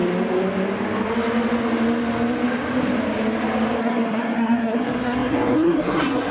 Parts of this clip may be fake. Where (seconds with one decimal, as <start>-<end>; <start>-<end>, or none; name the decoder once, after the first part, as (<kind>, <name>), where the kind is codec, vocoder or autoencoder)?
3.8-6.3 (codec, SNAC)

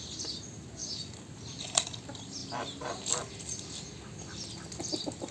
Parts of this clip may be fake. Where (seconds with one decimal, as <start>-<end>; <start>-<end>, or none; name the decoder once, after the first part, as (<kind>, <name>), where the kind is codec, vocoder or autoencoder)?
none

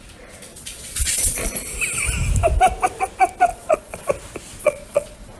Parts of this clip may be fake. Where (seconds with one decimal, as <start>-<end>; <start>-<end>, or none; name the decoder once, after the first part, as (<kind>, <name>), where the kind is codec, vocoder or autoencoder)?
0.5-1.5 (vocoder, Vocos); 3.5-4.1; 4.6-5.4

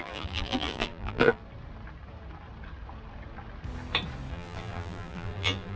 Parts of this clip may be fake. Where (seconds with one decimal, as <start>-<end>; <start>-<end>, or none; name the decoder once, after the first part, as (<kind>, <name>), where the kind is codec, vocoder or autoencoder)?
0.0-1.4 (vocoder, BigVGAN v2); 4.3-5.8

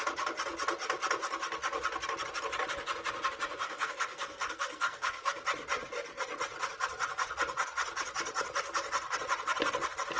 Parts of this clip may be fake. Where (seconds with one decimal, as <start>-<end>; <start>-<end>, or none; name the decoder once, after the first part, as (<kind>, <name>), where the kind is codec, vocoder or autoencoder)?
3.6-5.4 (codec, SNAC)

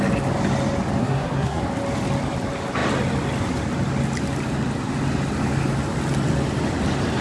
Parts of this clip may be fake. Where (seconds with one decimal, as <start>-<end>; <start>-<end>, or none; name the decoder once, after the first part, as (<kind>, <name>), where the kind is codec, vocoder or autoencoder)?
1.0-1.6 (codec, SNAC)

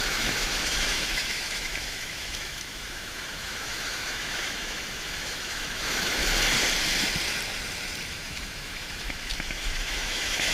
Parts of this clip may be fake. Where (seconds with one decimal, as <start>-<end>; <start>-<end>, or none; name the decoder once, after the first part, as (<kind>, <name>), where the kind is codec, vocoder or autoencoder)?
0.0-6.2 (autoencoder, DAC-VAE); 8.1-10.5